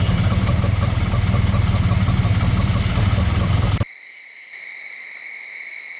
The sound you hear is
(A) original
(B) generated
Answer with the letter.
A